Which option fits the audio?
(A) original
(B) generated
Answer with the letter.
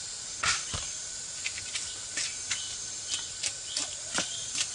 A